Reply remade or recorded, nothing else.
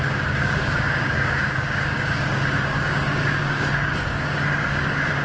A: remade